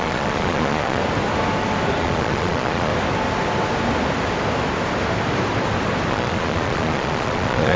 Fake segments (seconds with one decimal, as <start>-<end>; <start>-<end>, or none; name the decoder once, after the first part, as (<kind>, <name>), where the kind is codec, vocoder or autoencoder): 0.0-1.0 (vocoder, Vocos); 2.0-2.9; 6.1-7.8